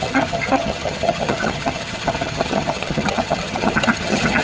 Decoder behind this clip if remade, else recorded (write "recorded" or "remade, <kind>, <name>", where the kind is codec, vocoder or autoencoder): remade, vocoder, HiFi-GAN